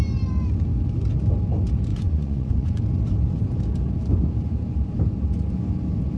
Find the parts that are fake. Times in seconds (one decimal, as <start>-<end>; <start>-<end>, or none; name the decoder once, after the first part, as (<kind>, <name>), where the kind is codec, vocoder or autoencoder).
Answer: 1.9-2.8 (vocoder, Vocos)